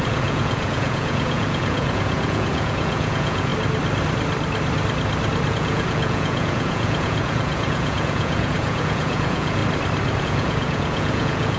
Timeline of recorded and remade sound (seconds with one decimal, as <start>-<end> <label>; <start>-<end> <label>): 0.0-3.5 remade; 3.5-5.5 recorded; 5.5-9.6 remade; 9.6-10.2 recorded; 10.2-11.6 remade